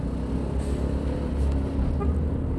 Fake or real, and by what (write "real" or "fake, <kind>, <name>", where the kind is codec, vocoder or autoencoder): real